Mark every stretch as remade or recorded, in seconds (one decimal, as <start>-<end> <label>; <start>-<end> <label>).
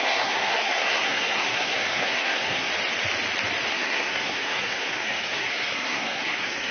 0.0-2.7 remade; 2.7-3.7 recorded; 3.7-6.7 remade